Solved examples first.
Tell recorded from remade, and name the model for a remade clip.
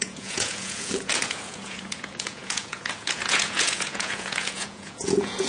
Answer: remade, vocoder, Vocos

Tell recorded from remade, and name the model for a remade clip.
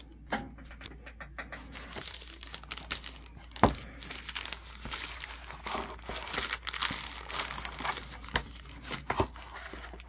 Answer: recorded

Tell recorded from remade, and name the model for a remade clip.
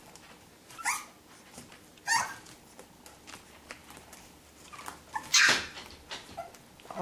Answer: recorded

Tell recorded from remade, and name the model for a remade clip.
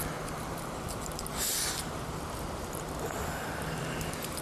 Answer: recorded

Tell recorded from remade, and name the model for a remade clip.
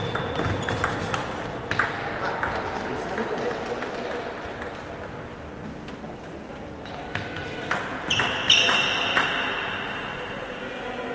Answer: recorded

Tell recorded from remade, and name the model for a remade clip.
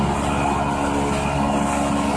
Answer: recorded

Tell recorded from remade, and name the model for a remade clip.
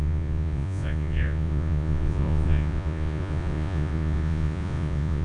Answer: remade, vocoder, Vocos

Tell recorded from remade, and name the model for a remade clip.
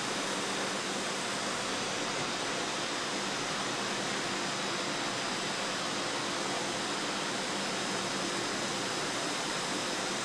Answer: recorded